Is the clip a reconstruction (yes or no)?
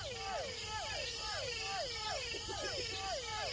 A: no